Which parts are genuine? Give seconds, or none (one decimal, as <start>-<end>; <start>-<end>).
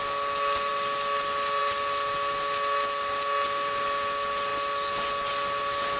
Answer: 0.0-6.0